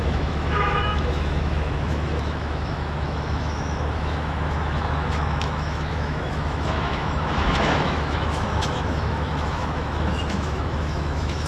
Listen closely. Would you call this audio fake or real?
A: fake